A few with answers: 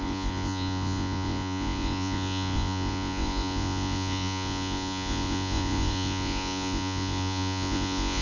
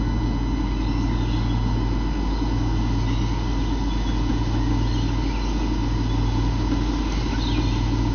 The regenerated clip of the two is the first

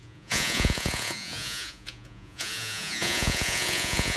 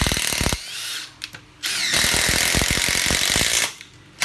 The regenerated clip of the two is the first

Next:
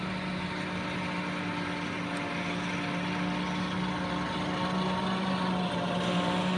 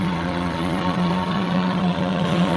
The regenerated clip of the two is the second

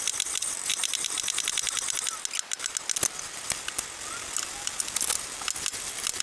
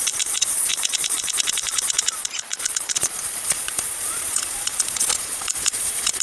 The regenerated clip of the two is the second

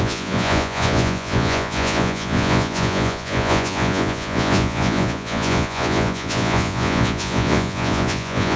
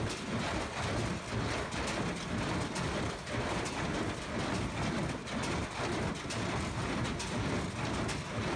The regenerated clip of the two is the first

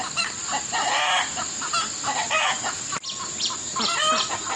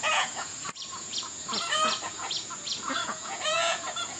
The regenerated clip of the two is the second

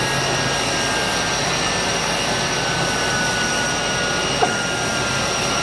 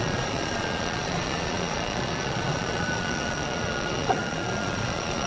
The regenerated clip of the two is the second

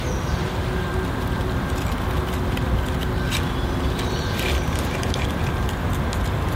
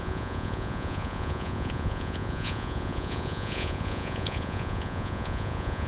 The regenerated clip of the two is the second